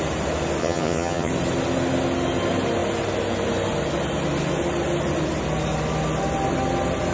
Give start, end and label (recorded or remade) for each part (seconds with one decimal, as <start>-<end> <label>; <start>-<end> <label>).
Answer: 0.0-0.6 recorded; 0.6-1.3 remade; 1.3-7.1 recorded